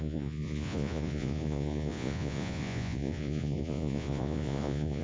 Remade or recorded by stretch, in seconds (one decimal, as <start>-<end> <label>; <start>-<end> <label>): 0.0-5.0 remade

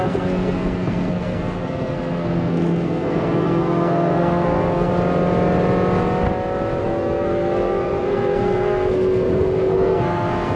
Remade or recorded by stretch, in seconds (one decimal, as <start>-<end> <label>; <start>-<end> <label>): 0.0-4.9 remade; 4.9-6.8 recorded; 6.8-10.6 remade

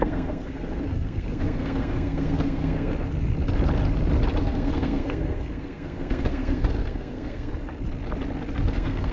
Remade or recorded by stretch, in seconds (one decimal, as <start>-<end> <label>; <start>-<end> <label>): 0.0-2.9 remade; 2.9-4.4 recorded; 4.4-7.5 remade; 7.5-8.7 recorded; 8.7-9.1 remade

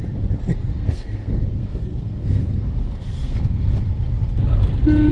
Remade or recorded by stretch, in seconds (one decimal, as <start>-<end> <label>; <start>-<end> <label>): 0.0-0.7 recorded; 0.7-3.8 remade; 3.8-5.1 recorded

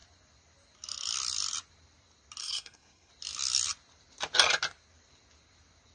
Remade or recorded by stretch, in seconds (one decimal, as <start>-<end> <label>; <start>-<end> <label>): 0.0-2.4 recorded; 2.4-3.1 remade; 3.1-5.9 recorded